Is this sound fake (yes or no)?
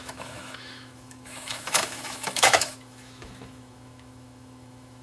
yes